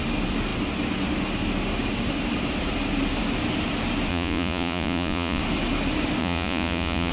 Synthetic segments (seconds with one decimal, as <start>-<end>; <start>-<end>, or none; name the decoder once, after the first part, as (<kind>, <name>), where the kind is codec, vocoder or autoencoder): 4.1-5.4 (vocoder, Vocos); 6.2-7.1